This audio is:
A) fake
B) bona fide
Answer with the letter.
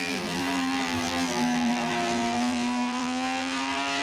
A